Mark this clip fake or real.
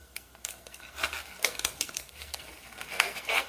fake